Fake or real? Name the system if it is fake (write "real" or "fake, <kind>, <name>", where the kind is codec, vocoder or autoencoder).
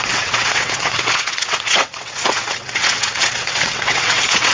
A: fake, vocoder, WaveNeXt